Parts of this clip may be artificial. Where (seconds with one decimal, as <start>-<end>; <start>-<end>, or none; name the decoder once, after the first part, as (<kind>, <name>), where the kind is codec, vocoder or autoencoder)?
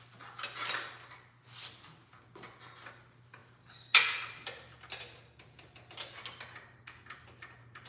none